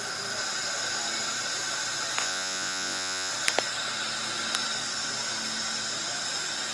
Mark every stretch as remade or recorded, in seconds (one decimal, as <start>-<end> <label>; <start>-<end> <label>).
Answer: 0.0-2.2 recorded; 2.2-3.3 remade; 3.3-6.7 recorded